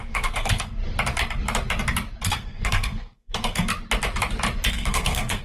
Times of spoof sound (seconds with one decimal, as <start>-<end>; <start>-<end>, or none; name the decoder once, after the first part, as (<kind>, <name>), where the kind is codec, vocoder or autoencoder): 0.0-0.8 (codec, SNAC); 2.3-3.7; 4.7-5.4